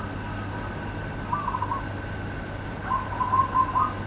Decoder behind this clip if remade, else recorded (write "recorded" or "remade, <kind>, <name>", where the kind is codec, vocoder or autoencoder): recorded